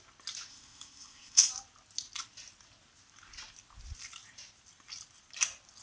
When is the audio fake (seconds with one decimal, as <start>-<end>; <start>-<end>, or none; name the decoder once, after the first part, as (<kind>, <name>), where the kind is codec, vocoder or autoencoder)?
0.5-1.5 (codec, ZipCodec)